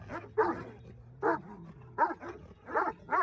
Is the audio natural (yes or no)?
yes